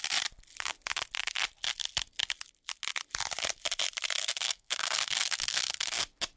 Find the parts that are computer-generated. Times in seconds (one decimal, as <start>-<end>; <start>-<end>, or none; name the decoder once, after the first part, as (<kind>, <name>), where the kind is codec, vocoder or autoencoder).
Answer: 4.2-6.0 (codec, SNAC)